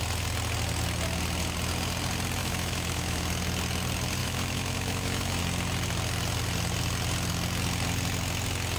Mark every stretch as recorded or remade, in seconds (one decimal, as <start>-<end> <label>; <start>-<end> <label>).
0.0-2.4 recorded; 2.4-3.2 remade; 3.2-4.2 recorded; 4.2-5.4 remade; 5.4-8.8 recorded